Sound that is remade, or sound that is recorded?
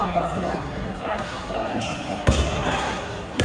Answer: remade